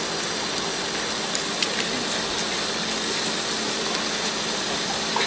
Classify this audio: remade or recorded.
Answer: recorded